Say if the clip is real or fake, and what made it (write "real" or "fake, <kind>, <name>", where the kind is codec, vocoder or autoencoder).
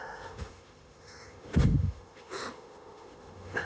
fake, autoencoder, DAC-VAE